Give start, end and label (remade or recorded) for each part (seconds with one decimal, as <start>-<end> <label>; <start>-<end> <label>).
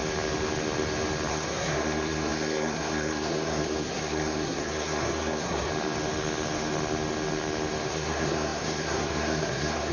0.0-1.3 recorded; 1.3-5.7 remade; 5.7-7.9 recorded; 7.9-9.9 remade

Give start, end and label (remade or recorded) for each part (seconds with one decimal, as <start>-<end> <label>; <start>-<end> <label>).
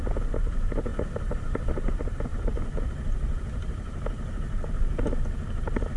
0.0-6.0 recorded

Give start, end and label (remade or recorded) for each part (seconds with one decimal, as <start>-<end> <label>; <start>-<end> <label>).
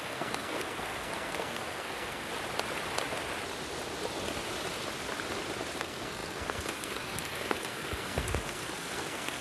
0.0-2.3 remade; 2.3-5.8 recorded; 5.8-9.4 remade